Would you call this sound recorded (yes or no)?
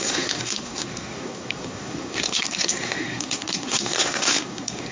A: no